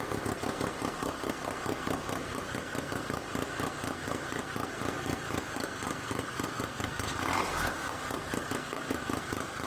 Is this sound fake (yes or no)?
yes